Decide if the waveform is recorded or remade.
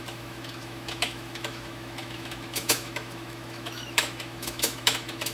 remade